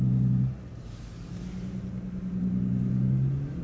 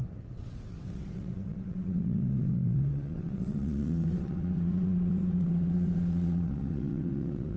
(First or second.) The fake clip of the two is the second